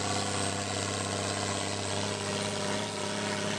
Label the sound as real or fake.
real